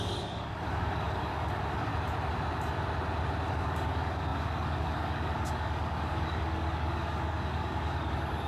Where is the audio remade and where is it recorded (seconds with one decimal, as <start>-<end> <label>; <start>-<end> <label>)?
0.0-1.9 remade; 1.9-3.5 recorded; 3.5-8.5 remade